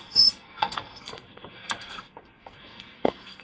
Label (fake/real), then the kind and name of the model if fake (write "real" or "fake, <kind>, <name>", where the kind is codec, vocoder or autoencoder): fake, codec, SNAC